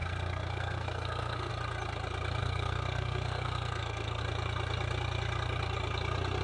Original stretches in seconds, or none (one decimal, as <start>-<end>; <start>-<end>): 1.5-2.4; 4.2-6.4